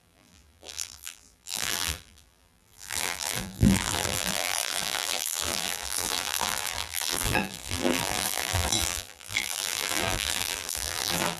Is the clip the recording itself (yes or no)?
no